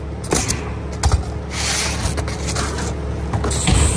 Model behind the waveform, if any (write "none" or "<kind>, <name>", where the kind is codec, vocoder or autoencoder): none